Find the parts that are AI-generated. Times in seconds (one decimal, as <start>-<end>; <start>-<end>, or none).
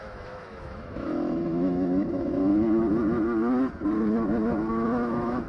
0.0-2.5; 4.7-5.5